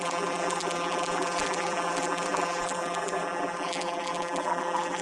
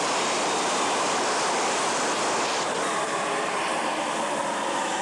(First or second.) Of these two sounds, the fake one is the first